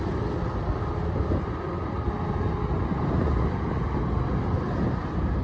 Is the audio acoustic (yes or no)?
yes